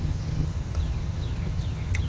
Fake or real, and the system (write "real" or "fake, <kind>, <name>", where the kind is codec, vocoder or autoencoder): fake, vocoder, HiFi-GAN